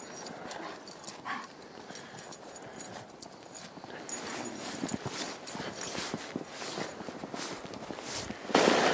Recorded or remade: recorded